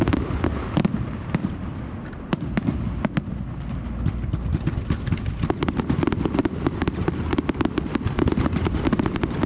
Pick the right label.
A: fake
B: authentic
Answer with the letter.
B